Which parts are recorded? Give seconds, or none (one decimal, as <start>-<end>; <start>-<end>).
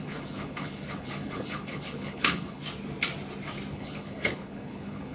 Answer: 2.6-3.7